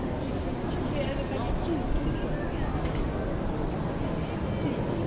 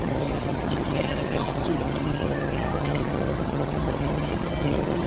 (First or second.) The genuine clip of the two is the first